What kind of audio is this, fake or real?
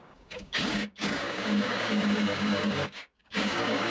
fake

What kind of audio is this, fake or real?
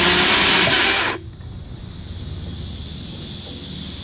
real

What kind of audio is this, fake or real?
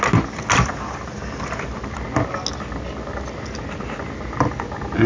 real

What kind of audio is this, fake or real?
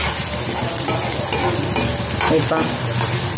real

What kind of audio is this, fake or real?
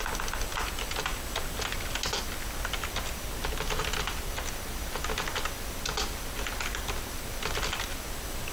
real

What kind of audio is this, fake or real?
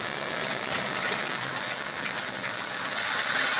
fake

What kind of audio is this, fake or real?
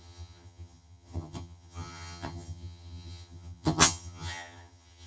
fake